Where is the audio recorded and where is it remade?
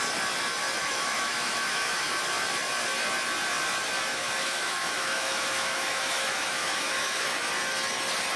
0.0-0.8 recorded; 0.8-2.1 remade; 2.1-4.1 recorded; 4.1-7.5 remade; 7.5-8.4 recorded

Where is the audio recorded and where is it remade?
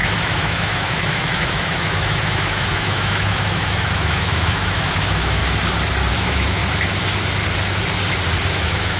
0.0-5.4 remade; 5.4-6.1 recorded; 6.1-6.6 remade; 6.6-8.5 recorded; 8.5-9.0 remade